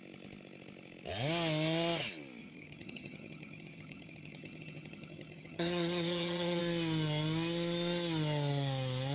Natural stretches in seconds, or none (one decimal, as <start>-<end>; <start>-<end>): 0.0-2.4; 6.6-9.1